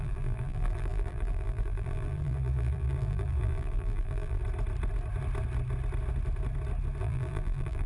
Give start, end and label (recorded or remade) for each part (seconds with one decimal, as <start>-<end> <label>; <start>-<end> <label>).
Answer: 0.0-4.4 remade; 4.4-7.0 recorded; 7.0-7.9 remade